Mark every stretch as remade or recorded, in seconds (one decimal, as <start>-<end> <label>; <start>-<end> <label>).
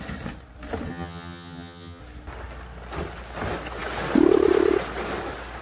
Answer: 0.0-0.9 recorded; 0.9-2.0 remade; 2.0-5.6 recorded